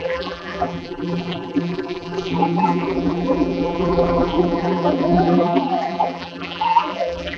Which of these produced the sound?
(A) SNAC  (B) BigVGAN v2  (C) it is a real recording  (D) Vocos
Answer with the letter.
B